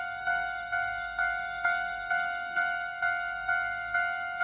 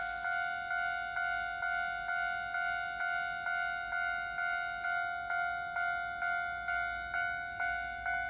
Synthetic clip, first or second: first